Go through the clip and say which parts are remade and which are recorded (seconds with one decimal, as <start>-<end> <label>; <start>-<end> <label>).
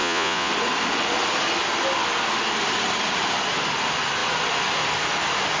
0.0-0.5 remade; 0.5-5.6 recorded